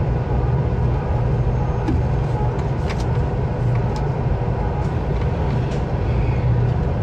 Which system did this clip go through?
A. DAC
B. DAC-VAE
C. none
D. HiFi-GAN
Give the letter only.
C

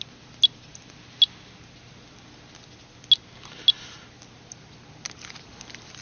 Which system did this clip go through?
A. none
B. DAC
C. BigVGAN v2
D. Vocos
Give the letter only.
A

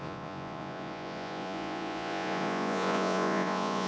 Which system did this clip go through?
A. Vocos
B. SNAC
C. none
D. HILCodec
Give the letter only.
A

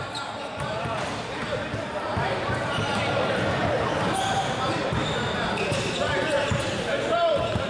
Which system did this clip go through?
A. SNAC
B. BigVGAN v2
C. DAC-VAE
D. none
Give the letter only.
B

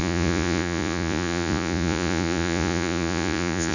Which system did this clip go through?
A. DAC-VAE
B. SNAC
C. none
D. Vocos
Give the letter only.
D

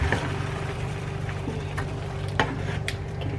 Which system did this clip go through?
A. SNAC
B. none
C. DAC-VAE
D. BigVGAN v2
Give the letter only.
D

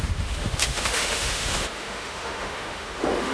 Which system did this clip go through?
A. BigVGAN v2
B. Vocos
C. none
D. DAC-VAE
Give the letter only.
D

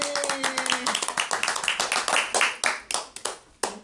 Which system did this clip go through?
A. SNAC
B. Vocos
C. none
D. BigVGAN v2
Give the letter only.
C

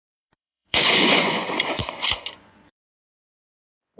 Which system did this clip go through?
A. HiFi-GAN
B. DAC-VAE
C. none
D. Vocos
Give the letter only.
D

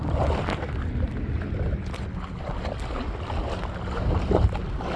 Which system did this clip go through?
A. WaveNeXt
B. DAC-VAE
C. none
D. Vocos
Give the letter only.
C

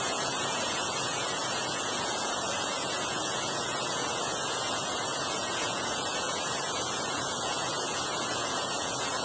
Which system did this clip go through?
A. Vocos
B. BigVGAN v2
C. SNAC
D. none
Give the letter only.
A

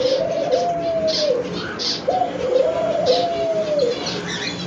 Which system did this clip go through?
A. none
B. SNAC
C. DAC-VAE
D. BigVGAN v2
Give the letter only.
A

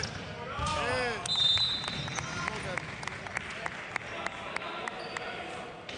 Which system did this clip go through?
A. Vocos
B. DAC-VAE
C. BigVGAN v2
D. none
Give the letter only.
D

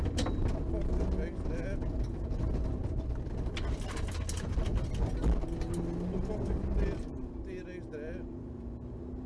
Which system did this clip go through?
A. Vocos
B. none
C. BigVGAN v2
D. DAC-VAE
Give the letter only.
B